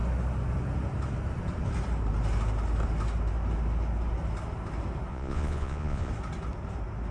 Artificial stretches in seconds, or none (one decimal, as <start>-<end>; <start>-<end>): 5.1-6.1